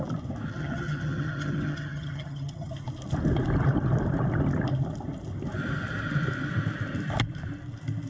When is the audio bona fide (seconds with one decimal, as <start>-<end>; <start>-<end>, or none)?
0.0-0.5; 2.7-8.1